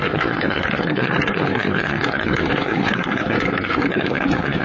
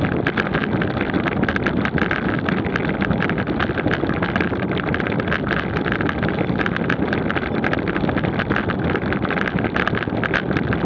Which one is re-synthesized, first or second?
first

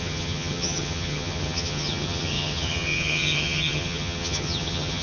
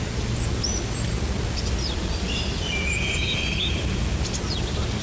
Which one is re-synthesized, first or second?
first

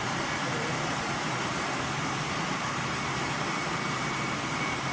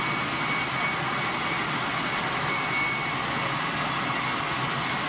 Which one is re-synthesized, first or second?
first